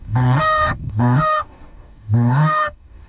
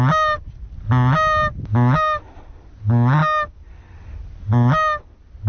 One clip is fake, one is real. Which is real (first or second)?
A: second